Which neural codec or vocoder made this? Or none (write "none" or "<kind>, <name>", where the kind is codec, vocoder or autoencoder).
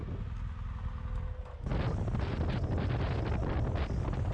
none